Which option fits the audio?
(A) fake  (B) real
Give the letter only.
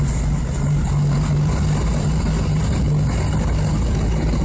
B